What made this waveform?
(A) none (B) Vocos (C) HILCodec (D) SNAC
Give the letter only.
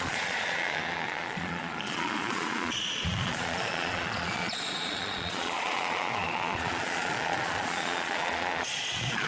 B